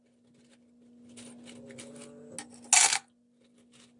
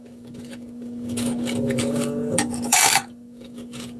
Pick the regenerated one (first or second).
second